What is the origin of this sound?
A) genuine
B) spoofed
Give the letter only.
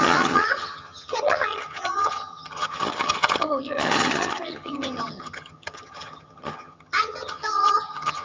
B